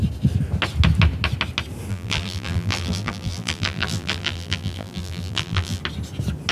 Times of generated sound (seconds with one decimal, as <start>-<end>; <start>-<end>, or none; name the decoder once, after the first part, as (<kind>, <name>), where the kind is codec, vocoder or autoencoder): 1.9-5.8 (vocoder, BigVGAN v2)